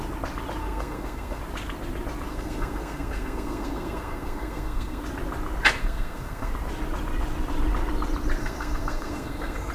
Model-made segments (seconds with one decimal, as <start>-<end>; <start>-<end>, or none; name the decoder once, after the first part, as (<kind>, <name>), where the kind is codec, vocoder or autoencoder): 0.6-1.4 (codec, SNAC); 2.3-5.0; 5.8-6.5; 8.4-9.7